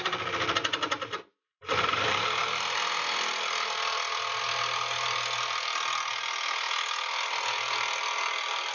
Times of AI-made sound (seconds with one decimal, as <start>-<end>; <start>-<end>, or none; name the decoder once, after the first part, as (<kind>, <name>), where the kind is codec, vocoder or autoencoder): none